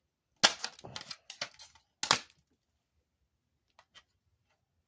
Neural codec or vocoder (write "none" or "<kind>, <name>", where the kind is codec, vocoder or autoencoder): none